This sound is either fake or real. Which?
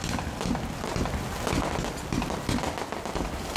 real